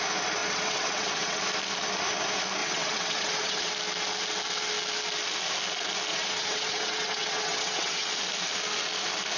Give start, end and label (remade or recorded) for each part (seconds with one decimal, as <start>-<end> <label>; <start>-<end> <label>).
0.0-0.4 recorded; 0.4-1.4 remade; 1.4-2.6 recorded; 2.6-3.7 remade; 3.7-6.1 recorded; 6.1-8.1 remade; 8.1-9.4 recorded